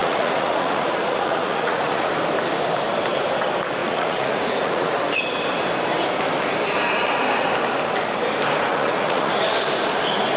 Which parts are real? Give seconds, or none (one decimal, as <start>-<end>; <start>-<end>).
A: 2.1-3.8; 4.9-8.7; 9.3-10.4